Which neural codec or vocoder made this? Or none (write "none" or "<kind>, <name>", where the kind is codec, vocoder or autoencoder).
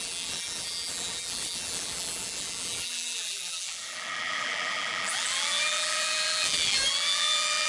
vocoder, BigVGAN v2